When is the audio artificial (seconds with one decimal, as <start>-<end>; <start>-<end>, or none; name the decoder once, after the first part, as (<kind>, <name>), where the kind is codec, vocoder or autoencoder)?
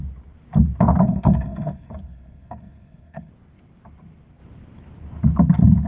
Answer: 1.0-3.3 (codec, SNAC)